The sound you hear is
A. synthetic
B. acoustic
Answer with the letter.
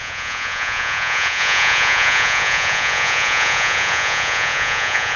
A